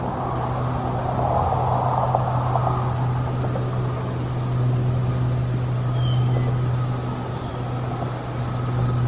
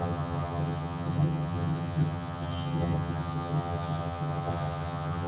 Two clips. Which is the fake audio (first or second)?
second